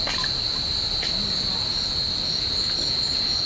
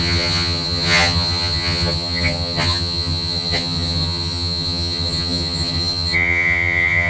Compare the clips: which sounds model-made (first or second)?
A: second